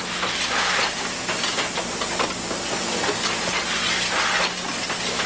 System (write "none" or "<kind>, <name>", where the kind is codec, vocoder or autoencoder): none